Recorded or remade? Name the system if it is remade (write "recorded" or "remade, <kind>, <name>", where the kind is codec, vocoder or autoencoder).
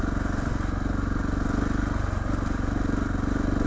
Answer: recorded